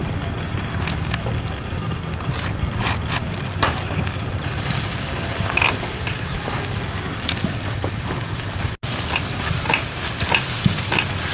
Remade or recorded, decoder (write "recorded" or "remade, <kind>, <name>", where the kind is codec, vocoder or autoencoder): recorded